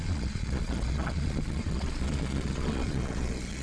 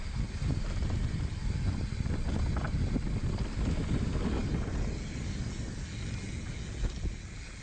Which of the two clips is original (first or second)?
second